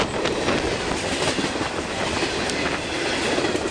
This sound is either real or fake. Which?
real